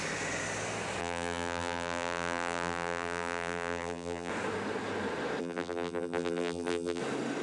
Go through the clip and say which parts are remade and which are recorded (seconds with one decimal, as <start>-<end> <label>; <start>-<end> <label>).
0.0-1.0 recorded; 1.0-4.3 remade; 4.3-5.4 recorded; 5.4-7.0 remade; 7.0-7.4 recorded